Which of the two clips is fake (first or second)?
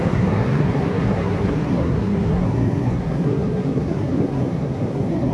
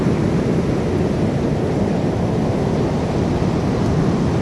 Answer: first